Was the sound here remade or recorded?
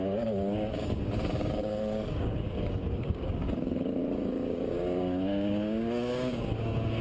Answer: remade